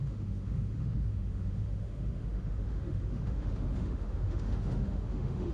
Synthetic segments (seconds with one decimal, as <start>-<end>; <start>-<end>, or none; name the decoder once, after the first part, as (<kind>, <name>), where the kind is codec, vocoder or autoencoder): 0.0-5.5 (autoencoder, DAC-VAE)